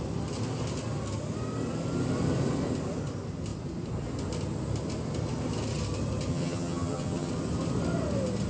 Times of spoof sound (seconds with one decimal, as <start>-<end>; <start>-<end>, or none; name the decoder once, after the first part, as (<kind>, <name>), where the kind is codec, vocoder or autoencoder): 6.3-7.3 (vocoder, HiFi-GAN)